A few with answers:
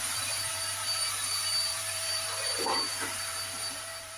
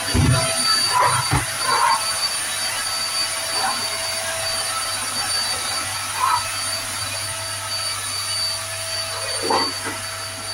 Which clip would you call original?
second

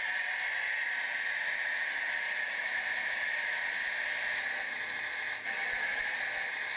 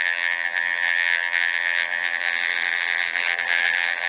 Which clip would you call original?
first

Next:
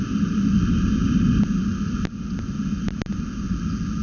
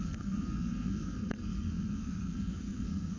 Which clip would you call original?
first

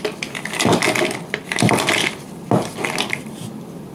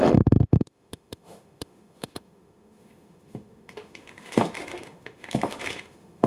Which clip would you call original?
first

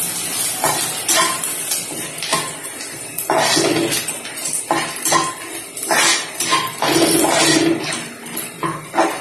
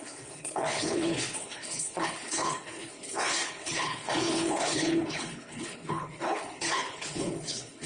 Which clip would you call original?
first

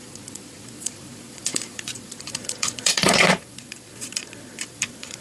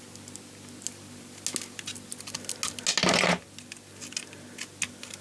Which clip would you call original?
second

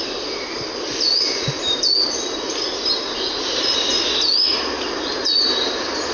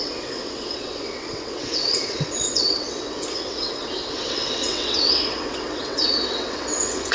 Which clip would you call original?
first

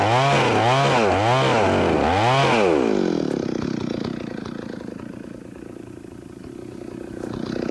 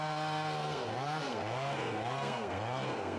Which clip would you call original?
first